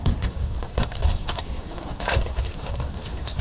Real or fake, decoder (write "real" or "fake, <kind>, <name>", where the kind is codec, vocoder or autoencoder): fake, codec, SNAC